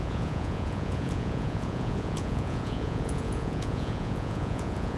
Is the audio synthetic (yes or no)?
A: yes